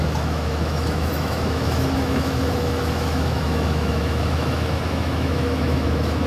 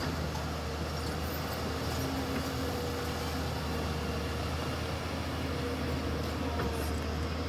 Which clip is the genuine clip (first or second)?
second